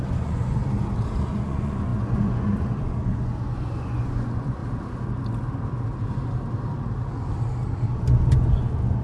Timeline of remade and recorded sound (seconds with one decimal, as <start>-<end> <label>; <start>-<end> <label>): 0.0-0.6 remade; 0.6-1.2 recorded; 1.2-4.6 remade; 4.6-7.9 recorded; 7.9-9.0 remade